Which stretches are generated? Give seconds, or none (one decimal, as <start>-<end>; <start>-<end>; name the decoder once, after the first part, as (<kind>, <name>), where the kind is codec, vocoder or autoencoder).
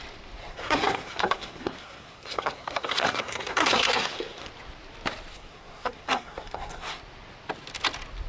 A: 0.4-4.5 (codec, SNAC); 5.3-7.0